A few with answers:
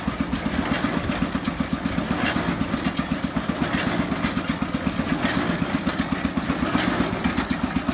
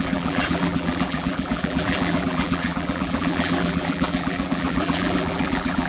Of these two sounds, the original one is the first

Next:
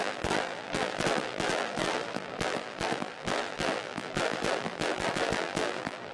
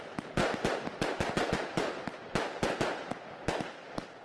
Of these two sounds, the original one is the second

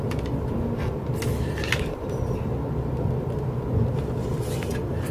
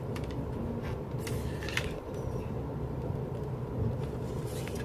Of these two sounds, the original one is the first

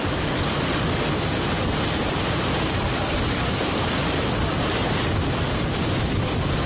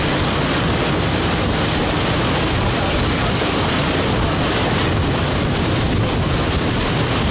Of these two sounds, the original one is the second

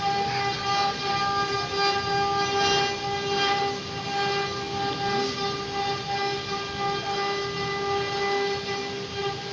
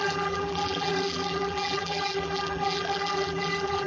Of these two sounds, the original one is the first